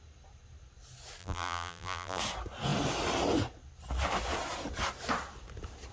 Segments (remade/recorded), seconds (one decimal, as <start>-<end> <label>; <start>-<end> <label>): 0.0-1.2 recorded; 1.2-2.2 remade; 2.2-5.9 recorded